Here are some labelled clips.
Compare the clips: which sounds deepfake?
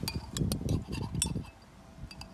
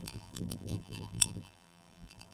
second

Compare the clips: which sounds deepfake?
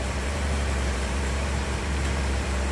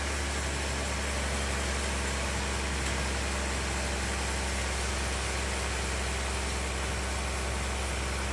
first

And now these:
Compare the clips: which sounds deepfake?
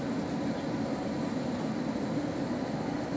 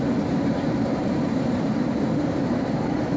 second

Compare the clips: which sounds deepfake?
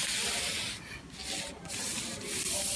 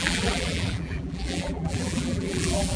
second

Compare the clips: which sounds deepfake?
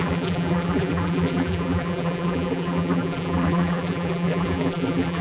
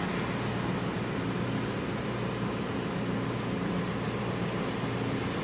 first